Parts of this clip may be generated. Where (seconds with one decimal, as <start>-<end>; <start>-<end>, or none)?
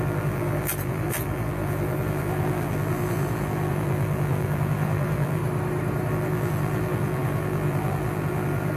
0.0-5.4; 6.1-8.8